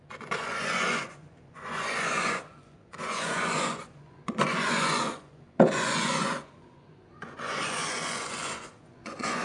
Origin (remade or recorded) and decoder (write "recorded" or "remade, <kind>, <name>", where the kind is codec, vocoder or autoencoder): remade, vocoder, Vocos